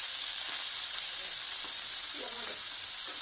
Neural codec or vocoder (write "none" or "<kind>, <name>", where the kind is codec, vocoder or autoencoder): none